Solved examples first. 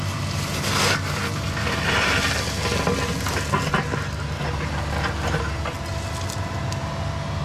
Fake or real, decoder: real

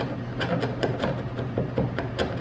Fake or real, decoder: real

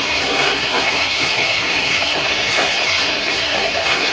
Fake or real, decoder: fake, codec, SNAC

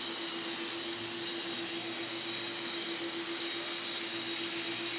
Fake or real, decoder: real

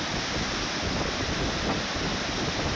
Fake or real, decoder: real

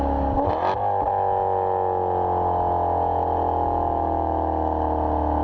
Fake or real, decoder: real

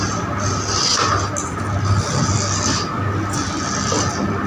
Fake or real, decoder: real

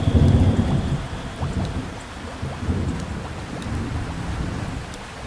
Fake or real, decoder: real